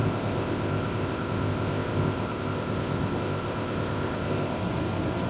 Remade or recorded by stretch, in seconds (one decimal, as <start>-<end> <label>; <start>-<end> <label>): 0.0-4.6 remade; 4.6-5.3 recorded